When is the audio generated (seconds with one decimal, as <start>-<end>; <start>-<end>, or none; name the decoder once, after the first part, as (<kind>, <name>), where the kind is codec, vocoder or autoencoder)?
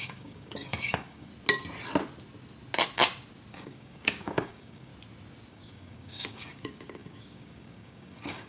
0.0-1.3 (codec, DAC); 3.5-4.9; 5.5-8.5